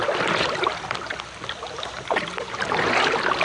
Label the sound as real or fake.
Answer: real